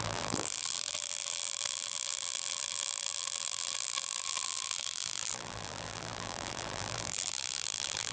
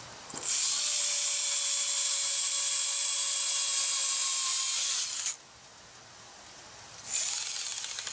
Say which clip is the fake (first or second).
first